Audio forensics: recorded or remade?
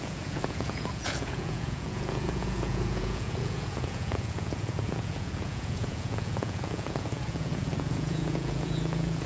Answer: remade